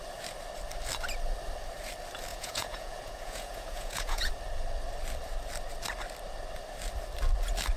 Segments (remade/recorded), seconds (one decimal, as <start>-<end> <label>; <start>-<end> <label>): 0.0-2.3 recorded; 2.3-4.3 remade; 4.3-7.8 recorded